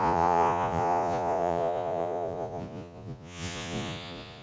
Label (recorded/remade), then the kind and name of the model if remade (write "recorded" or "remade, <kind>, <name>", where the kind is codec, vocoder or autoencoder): remade, vocoder, Vocos